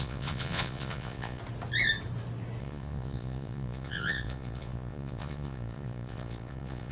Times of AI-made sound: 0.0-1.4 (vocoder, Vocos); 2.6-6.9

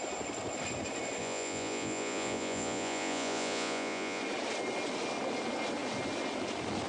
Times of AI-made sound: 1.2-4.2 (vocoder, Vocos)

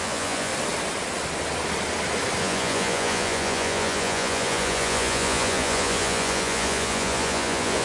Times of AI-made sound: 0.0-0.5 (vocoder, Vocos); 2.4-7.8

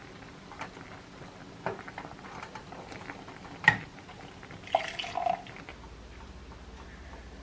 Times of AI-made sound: none